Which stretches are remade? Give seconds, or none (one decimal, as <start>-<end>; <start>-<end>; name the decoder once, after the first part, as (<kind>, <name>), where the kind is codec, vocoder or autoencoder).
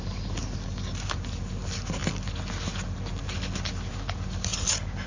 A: none